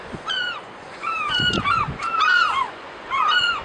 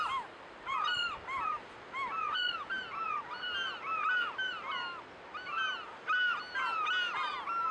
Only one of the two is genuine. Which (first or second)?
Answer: second